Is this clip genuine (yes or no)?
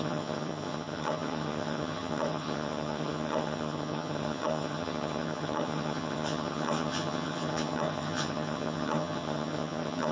no